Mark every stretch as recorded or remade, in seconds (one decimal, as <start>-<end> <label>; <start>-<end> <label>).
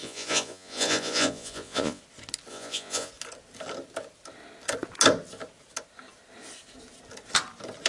0.0-2.0 remade; 2.0-2.5 recorded; 2.5-3.1 remade; 3.1-7.9 recorded